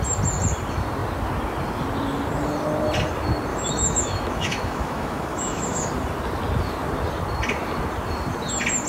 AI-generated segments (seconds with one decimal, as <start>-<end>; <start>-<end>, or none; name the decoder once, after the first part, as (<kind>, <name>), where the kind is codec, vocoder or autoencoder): 3.5-5.9 (autoencoder, DAC-VAE)